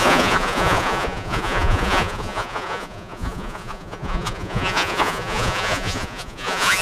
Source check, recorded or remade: remade